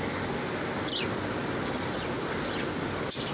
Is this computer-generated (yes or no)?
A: no